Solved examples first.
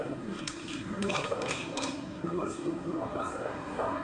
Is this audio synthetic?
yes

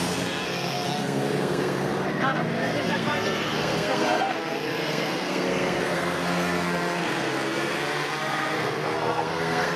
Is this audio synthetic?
yes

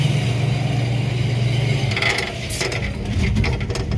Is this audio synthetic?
no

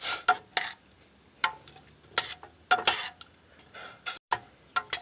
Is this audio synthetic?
no